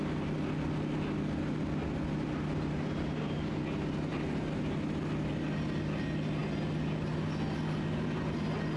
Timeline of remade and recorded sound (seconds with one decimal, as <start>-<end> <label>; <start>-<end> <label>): 0.0-8.8 recorded